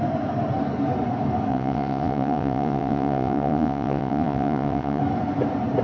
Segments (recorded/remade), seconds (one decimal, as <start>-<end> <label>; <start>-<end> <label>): 0.0-1.5 recorded; 1.5-5.0 remade; 5.0-5.8 recorded